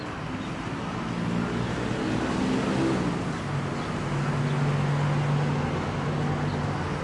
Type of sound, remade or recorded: recorded